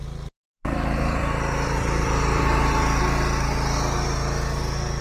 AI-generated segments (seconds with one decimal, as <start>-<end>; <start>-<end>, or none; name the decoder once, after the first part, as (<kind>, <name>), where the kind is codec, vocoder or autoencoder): 0.0-3.0 (vocoder, BigVGAN v2)